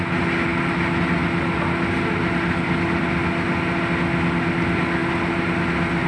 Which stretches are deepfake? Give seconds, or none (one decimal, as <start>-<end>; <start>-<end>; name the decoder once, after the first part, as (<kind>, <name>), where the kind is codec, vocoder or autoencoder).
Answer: none